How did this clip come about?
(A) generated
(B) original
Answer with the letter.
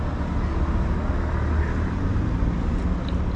B